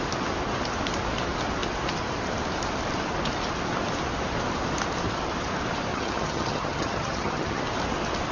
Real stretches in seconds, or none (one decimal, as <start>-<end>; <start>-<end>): 0.0-5.9; 7.6-8.3